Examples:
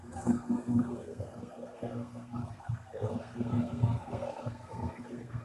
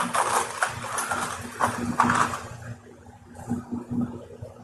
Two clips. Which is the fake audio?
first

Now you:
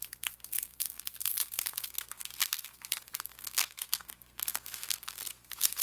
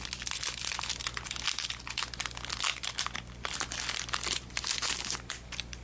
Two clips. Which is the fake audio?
first